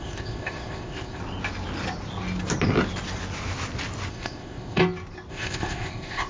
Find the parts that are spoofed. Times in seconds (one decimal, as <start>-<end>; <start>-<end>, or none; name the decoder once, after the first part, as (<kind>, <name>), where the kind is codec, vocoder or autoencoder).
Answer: 0.0-1.2 (codec, ZipCodec); 4.1-4.8; 5.3-6.3

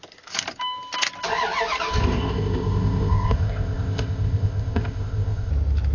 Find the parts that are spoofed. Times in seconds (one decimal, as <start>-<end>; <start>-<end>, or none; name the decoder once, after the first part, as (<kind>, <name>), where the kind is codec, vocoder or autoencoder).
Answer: 2.0-5.5 (codec, ZipCodec)

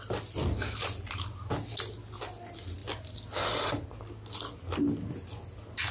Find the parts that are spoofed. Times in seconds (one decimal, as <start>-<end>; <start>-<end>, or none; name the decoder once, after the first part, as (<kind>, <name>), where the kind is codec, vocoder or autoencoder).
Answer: none

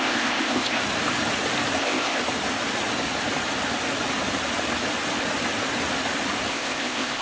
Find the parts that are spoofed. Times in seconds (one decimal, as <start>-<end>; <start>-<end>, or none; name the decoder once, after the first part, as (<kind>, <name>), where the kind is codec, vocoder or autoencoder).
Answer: 0.0-0.8 (codec, ZipCodec); 1.8-2.2; 6.5-7.2